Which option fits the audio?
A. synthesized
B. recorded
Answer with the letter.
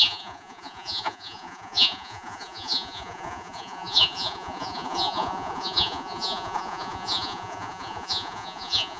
A